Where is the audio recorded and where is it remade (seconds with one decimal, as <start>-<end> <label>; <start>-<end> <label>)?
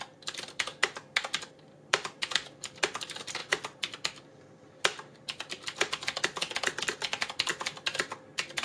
0.0-0.7 remade; 0.7-1.5 recorded; 1.5-7.5 remade; 7.5-8.6 recorded